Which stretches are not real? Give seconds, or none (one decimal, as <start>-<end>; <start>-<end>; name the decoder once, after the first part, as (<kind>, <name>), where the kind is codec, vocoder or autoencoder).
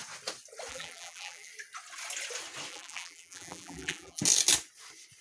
0.7-1.5 (vocoder, BigVGAN v2); 2.7-4.2